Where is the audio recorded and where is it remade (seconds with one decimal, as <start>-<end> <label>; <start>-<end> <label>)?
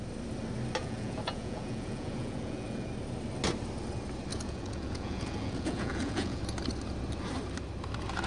0.0-0.8 recorded; 0.8-2.9 remade; 2.9-4.3 recorded; 4.3-6.4 remade; 6.4-8.3 recorded